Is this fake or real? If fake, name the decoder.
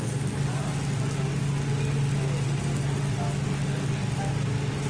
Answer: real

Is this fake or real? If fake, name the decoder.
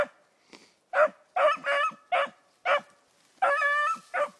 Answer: real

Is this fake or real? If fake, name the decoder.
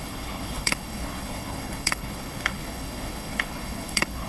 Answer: fake, codec, HILCodec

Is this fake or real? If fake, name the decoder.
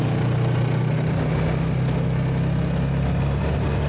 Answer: real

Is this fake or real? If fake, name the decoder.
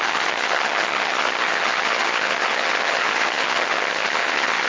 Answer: fake, vocoder, HiFi-GAN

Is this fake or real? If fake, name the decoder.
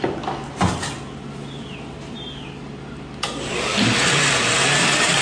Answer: real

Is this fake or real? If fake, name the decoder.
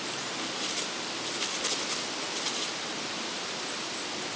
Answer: real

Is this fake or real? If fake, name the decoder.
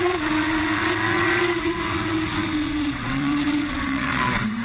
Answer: fake, vocoder, WaveNeXt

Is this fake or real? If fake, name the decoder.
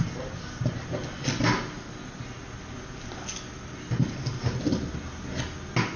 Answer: real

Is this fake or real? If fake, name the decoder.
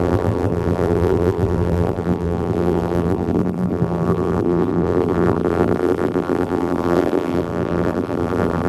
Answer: fake, vocoder, BigVGAN v2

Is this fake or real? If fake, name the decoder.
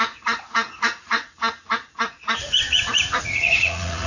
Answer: fake, vocoder, Vocos